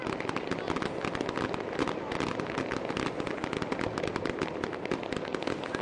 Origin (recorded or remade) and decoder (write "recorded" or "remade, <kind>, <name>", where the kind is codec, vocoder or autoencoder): recorded